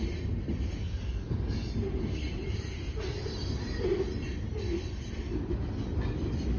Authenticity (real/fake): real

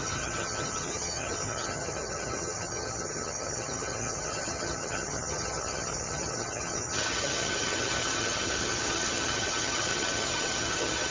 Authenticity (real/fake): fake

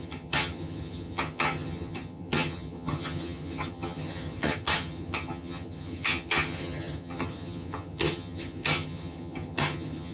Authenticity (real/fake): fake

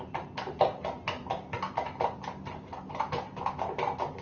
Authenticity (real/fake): real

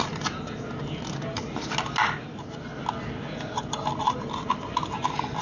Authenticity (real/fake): real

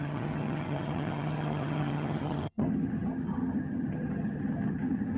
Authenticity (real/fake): fake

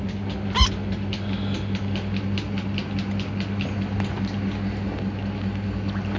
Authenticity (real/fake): real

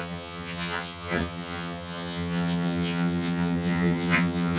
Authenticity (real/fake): fake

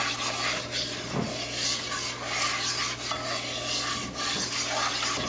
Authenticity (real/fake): real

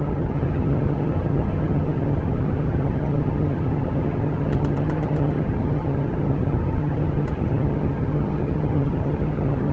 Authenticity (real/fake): fake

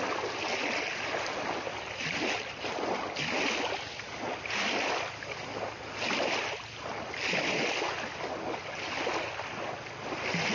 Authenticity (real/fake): real